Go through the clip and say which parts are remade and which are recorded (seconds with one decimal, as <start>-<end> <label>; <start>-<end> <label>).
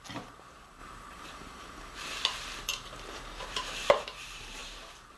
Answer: 0.0-5.2 remade